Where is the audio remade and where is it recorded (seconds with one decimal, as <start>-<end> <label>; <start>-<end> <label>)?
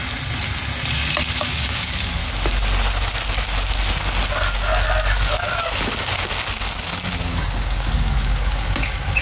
0.0-1.4 recorded; 1.4-2.2 remade; 2.2-5.2 recorded; 5.2-9.2 remade